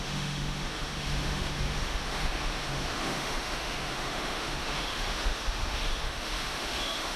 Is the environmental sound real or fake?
fake